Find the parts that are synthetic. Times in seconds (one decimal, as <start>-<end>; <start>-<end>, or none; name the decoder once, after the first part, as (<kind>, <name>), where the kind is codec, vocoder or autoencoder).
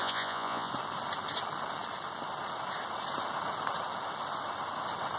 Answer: 0.0-0.7 (vocoder, Vocos)